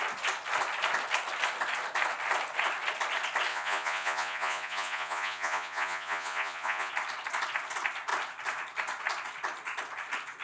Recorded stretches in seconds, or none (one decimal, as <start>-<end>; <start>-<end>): 0.0-3.5; 6.9-10.4